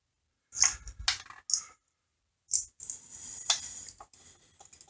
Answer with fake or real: real